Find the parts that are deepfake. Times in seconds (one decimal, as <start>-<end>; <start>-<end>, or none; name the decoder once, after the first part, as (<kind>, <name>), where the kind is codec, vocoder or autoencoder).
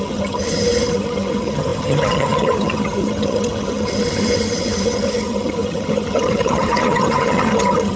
0.0-8.0 (vocoder, HiFi-GAN)